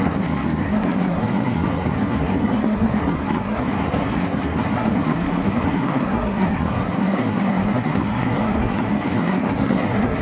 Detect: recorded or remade remade